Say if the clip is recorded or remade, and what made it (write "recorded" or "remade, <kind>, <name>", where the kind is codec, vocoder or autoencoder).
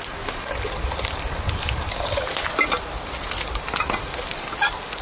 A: recorded